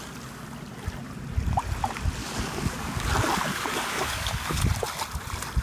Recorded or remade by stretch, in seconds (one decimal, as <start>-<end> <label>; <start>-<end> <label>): 0.0-2.2 recorded; 2.2-3.1 remade; 3.1-3.5 recorded; 3.5-4.6 remade; 4.6-5.6 recorded